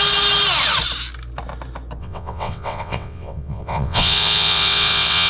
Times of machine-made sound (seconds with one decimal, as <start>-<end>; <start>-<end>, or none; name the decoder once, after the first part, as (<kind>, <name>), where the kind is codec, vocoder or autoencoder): 2.0-5.3 (vocoder, WaveNeXt)